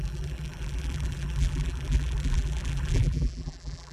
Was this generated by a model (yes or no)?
yes